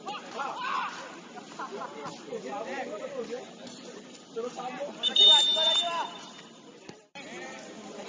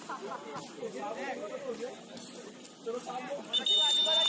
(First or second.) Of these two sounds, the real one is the second